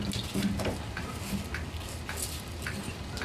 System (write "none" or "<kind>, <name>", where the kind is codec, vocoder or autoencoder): none